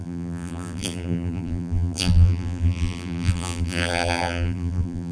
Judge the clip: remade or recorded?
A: remade